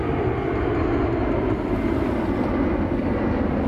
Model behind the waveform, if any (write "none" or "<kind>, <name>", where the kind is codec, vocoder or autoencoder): none